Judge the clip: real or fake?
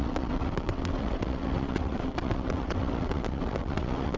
fake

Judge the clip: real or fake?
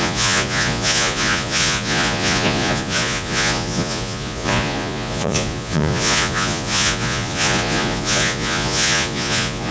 fake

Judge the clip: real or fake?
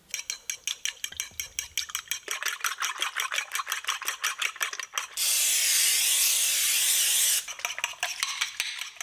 real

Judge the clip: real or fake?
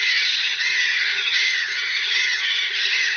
fake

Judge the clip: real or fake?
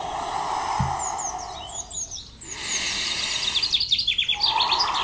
real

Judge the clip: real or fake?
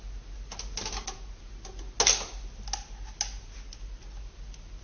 real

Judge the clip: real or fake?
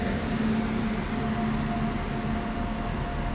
real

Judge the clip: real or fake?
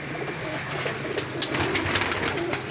real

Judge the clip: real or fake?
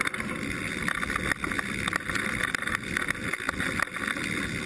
real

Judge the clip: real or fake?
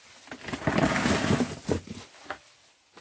real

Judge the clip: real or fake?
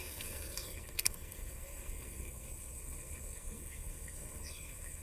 fake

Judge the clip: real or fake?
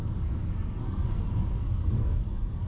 fake